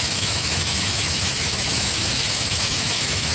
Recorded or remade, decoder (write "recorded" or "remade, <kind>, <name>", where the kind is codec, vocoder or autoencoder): remade, autoencoder, DAC-VAE